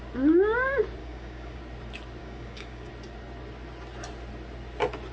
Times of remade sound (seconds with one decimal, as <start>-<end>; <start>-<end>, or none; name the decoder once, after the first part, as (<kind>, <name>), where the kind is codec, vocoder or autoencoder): 1.0-1.6 (codec, DAC); 2.2-2.9

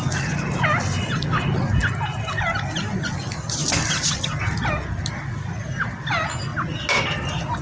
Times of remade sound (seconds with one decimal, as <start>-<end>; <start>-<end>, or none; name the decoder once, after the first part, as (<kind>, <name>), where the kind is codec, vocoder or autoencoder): none

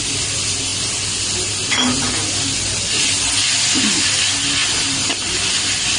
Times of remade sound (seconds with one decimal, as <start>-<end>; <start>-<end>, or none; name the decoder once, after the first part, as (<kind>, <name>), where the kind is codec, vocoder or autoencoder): none

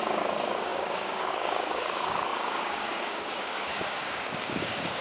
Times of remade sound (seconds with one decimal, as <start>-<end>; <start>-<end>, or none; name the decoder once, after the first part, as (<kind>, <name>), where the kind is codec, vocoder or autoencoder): 0.0-5.0 (codec, DAC)

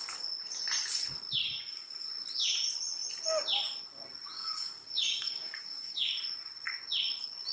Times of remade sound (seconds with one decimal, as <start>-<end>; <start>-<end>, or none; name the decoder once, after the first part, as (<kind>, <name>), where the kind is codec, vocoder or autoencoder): 1.4-1.9 (codec, DAC); 4.3-6.1